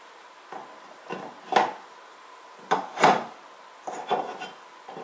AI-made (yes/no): no